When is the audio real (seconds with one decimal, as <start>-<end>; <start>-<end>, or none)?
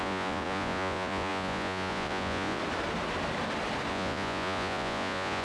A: 2.6-3.9